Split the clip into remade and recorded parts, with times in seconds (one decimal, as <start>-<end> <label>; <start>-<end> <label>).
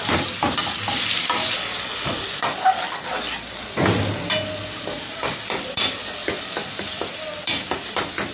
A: 0.0-8.3 recorded